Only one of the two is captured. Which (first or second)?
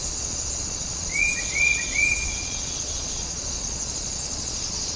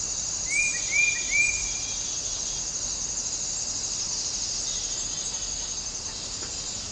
second